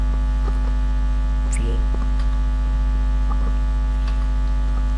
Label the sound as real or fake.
real